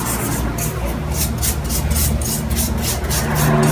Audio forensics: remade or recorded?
recorded